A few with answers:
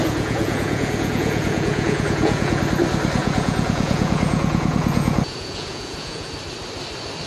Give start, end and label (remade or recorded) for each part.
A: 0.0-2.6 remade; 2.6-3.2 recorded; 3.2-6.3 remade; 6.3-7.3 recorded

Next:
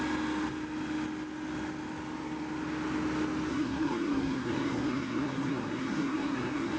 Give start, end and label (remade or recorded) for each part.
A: 0.0-3.5 recorded; 3.5-6.8 remade

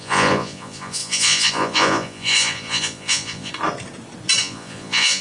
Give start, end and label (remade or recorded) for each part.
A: 0.0-3.5 remade; 3.5-4.4 recorded; 4.4-5.2 remade

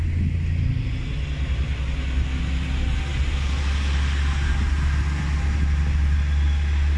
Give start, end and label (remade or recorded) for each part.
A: 0.0-7.0 recorded

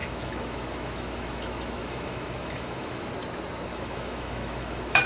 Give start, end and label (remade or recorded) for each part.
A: 0.0-3.1 remade; 3.1-3.7 recorded; 3.7-5.1 remade

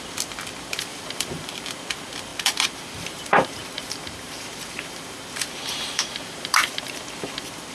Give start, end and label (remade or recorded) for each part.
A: 0.0-0.9 recorded; 0.9-1.7 remade; 1.7-2.3 recorded; 2.3-6.9 remade; 6.9-7.7 recorded

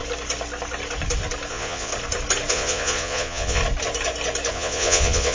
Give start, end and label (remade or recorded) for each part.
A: 0.0-1.5 recorded; 1.5-1.9 remade; 1.9-2.5 recorded; 2.5-3.6 remade; 3.6-4.5 recorded; 4.5-5.3 remade